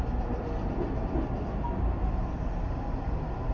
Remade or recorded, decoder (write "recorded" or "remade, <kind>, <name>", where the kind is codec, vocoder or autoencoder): recorded